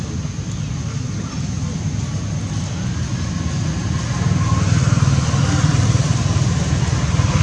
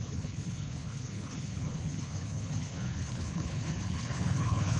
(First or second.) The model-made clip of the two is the second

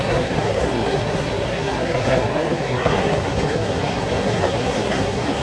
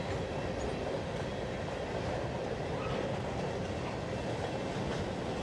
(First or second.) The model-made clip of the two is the first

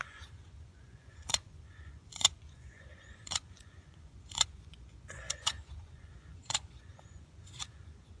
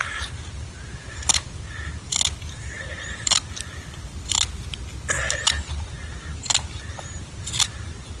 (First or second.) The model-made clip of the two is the first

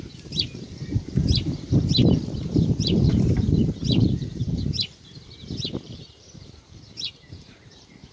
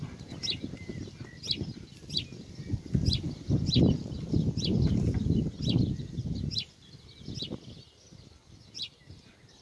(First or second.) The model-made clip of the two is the first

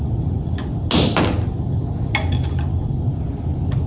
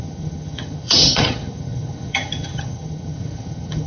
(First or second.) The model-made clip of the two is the second